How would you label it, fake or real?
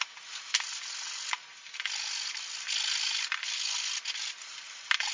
real